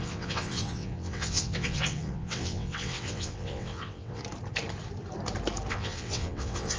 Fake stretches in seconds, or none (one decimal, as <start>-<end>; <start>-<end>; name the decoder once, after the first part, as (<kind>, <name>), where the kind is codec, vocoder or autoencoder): 0.0-4.2 (vocoder, WaveNeXt); 5.7-6.8